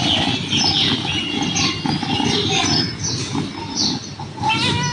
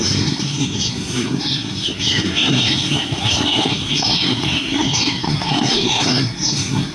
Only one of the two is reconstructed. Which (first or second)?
second